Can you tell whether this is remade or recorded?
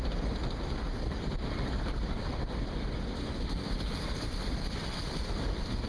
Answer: remade